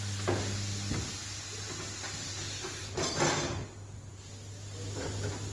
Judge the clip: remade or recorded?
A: recorded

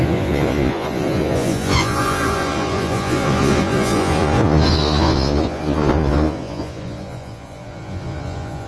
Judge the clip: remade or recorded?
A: remade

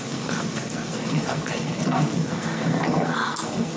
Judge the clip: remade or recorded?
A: remade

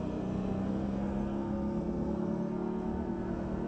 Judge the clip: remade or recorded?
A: remade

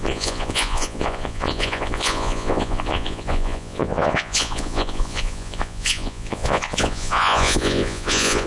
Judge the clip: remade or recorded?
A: remade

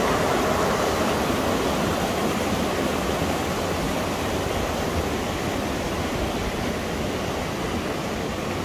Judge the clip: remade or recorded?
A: recorded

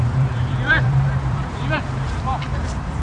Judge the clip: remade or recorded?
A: remade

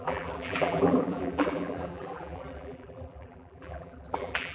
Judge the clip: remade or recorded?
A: remade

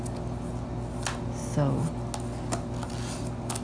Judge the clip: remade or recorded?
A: recorded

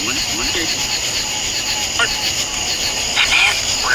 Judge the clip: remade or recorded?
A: recorded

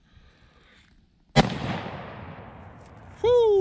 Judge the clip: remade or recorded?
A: recorded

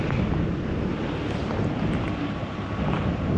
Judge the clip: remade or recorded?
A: recorded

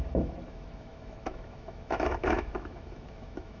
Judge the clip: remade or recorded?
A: remade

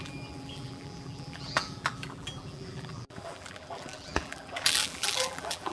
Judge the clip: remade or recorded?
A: remade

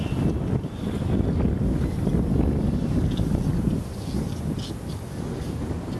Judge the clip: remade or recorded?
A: recorded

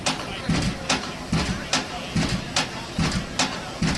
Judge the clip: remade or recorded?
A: recorded